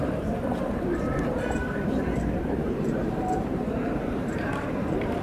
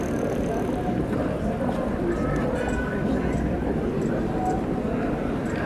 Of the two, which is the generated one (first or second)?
first